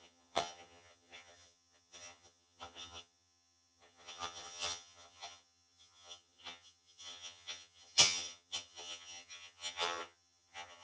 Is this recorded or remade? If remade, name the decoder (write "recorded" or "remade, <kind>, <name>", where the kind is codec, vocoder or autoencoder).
remade, vocoder, HiFi-GAN